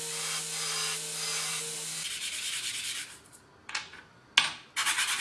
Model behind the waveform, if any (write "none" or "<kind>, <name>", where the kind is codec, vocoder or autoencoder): none